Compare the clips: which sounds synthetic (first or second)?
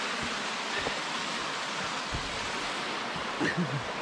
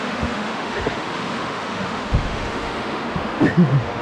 second